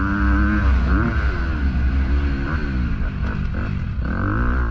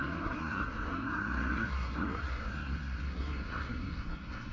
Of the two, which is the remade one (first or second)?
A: second